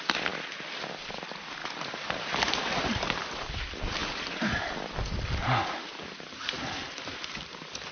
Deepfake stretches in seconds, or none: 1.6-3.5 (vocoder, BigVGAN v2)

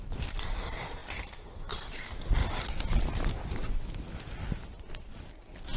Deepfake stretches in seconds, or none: 2.4-3.2 (vocoder, BigVGAN v2)

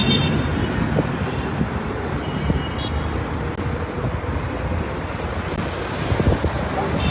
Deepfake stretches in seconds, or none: 0.0-2.3 (vocoder, BigVGAN v2)